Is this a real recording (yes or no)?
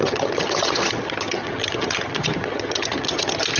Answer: no